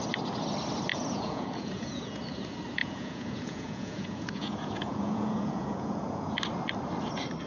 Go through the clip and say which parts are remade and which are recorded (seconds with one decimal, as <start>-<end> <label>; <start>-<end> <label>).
0.0-0.9 recorded; 0.9-2.2 remade; 2.2-2.8 recorded; 2.8-6.3 remade; 6.3-7.5 recorded